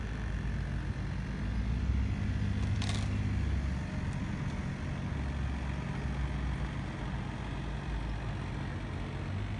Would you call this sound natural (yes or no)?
yes